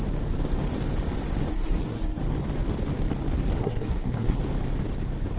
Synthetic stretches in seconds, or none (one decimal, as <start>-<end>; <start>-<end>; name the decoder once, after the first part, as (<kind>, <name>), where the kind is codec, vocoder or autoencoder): 1.5-2.2 (codec, SNAC); 3.6-4.4